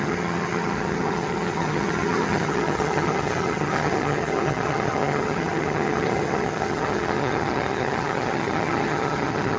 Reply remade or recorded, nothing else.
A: remade